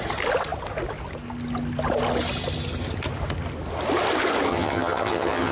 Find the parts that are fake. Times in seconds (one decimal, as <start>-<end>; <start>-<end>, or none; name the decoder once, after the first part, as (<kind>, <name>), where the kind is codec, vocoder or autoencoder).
4.5-5.5 (vocoder, HiFi-GAN)